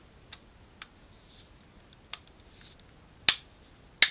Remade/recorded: recorded